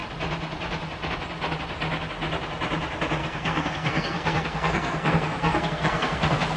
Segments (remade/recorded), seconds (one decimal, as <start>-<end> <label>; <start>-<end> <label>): 0.0-3.2 recorded; 3.2-6.6 remade